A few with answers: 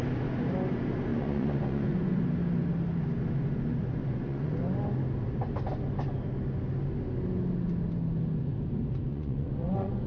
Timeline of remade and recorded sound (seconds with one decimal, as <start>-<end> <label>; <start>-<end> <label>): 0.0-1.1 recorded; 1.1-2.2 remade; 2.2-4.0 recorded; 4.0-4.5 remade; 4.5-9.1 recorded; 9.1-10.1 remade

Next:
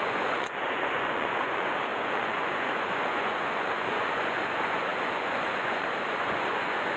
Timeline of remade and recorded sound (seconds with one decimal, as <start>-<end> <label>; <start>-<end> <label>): 0.0-7.0 remade

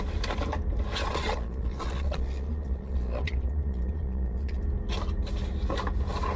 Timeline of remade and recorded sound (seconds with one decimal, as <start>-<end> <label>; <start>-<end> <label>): 0.0-1.1 recorded; 1.1-4.6 remade; 4.6-6.4 recorded

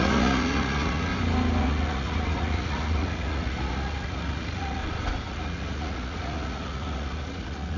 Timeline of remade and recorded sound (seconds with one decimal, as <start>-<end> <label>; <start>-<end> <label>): 0.0-1.1 remade; 1.1-1.6 recorded; 1.6-4.8 remade; 4.8-5.3 recorded; 5.3-7.8 remade

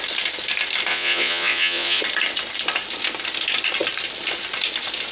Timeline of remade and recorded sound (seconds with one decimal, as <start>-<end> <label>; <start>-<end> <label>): 0.0-0.9 recorded; 0.9-2.0 remade; 2.0-5.1 recorded

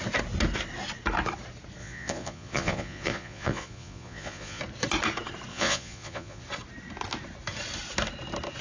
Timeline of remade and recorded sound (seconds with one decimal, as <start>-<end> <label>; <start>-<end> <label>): 0.0-1.8 recorded; 1.8-4.6 remade; 4.6-5.5 recorded; 5.5-6.4 remade; 6.4-8.6 recorded

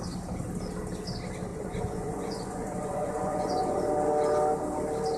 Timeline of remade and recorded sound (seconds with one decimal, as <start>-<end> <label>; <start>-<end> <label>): 0.0-1.5 recorded; 1.5-3.9 remade; 3.9-5.2 recorded

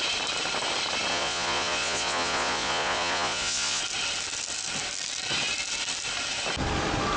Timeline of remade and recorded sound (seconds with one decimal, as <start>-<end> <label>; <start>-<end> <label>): 0.0-1.1 recorded; 1.1-3.8 remade; 3.8-7.2 recorded